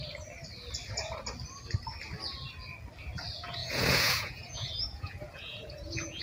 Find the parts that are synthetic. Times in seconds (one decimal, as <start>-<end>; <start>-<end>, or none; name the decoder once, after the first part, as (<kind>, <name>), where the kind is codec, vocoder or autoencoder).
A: 3.6-6.2 (vocoder, Vocos)